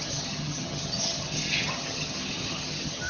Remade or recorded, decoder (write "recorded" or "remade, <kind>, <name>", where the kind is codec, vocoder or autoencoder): remade, vocoder, HiFi-GAN